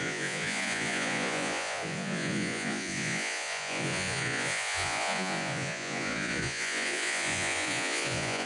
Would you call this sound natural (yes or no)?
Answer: no